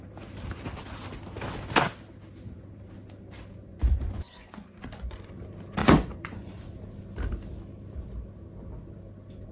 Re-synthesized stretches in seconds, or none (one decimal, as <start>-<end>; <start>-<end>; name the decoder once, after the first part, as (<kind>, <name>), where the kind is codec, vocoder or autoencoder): 3.7-5.3 (vocoder, Vocos); 5.8-6.5